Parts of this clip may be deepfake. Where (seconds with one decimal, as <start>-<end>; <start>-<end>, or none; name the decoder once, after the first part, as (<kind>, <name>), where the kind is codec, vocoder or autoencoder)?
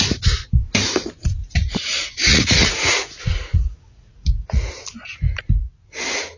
1.4-4.7 (vocoder, Vocos)